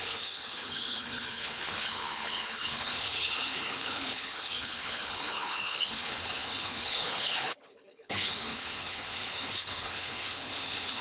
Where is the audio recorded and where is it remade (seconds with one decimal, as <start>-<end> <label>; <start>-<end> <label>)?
0.0-11.0 remade